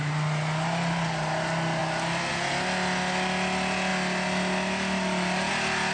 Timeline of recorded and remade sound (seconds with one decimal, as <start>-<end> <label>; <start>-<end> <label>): 0.0-5.9 recorded